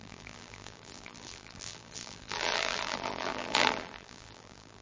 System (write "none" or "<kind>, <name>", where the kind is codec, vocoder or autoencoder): vocoder, BigVGAN v2